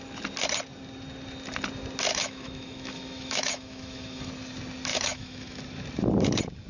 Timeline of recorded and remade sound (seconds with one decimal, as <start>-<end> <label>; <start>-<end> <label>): 0.0-2.1 recorded; 2.1-4.3 remade; 4.3-4.9 recorded; 4.9-5.6 remade; 5.6-6.7 recorded